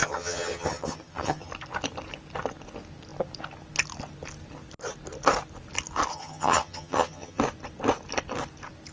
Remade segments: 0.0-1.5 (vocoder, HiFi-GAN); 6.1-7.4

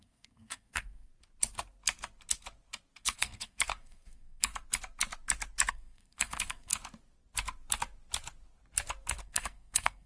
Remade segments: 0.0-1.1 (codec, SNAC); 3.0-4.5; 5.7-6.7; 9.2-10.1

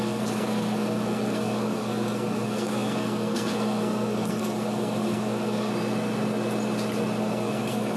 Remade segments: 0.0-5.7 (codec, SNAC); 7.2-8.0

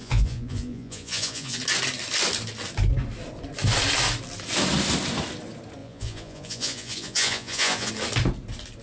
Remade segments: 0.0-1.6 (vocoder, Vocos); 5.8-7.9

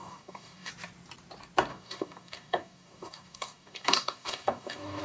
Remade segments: 0.0-0.7 (codec, DAC); 1.7-5.0

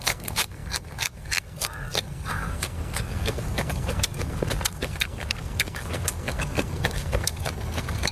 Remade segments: 0.0-8.1 (codec, SNAC)